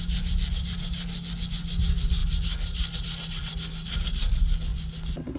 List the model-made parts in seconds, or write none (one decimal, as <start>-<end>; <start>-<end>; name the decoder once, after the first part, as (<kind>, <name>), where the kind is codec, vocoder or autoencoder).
none